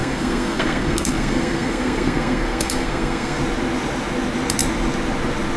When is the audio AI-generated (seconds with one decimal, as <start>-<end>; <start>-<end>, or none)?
0.0-3.4